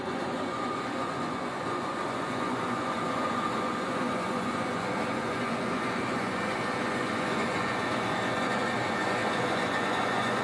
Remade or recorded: remade